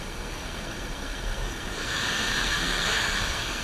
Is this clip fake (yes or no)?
yes